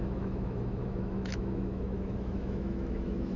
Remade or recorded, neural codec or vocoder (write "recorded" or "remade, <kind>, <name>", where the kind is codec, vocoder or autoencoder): remade, autoencoder, DAC-VAE